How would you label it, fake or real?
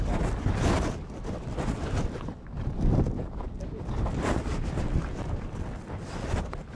fake